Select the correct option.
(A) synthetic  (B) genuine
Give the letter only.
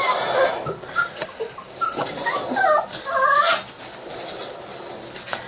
B